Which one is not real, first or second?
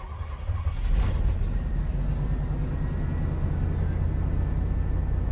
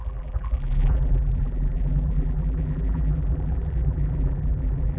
second